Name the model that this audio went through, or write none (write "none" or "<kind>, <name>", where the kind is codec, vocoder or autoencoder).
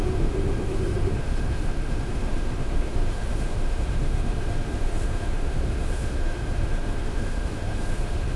autoencoder, DAC-VAE